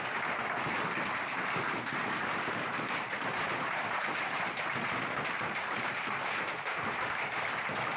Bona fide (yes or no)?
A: no